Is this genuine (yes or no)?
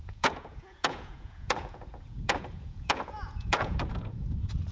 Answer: no